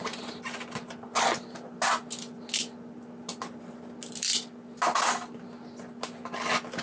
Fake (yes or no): no